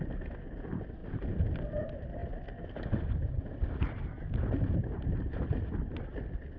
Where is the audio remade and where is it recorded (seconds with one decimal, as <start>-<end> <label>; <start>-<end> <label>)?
0.0-6.6 recorded